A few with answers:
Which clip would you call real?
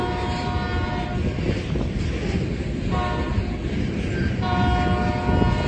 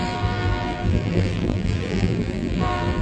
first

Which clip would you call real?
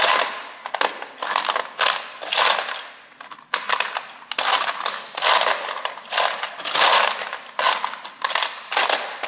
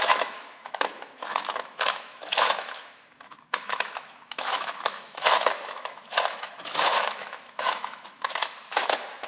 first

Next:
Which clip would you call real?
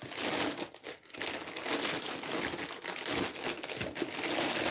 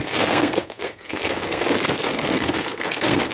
first